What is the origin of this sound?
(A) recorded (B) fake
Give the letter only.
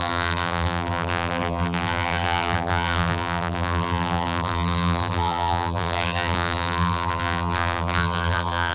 B